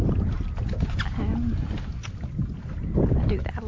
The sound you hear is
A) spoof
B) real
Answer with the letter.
B